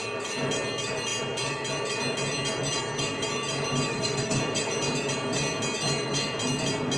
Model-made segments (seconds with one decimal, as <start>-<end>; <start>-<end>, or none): 3.9-4.4